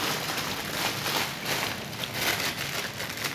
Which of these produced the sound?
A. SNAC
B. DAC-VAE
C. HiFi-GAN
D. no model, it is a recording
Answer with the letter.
D